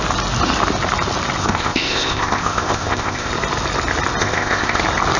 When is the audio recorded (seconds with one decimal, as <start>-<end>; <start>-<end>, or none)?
0.0-1.4; 3.3-4.2; 4.8-5.2